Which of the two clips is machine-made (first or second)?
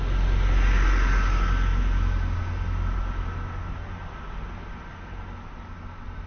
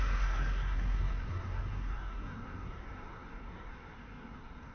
second